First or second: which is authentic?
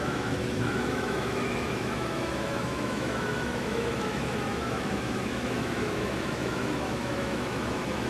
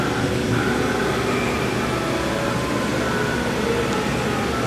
second